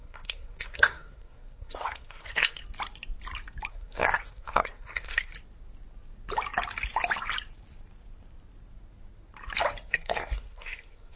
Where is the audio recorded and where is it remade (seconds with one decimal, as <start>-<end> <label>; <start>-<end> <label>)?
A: 0.0-2.6 remade; 2.6-3.7 recorded; 3.7-5.3 remade; 5.3-9.9 recorded; 9.9-11.2 remade